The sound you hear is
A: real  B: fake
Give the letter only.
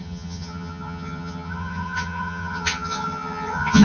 B